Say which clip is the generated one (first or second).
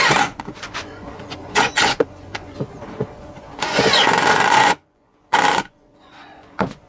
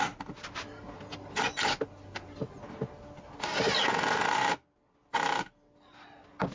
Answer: first